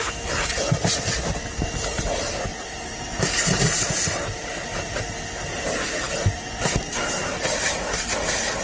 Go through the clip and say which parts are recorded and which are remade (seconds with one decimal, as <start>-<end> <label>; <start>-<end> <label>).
0.0-2.5 recorded; 2.5-3.0 remade; 3.0-8.6 recorded